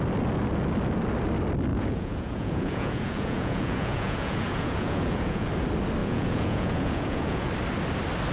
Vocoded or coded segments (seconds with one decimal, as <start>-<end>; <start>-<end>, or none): 1.7-5.5; 6.0-7.5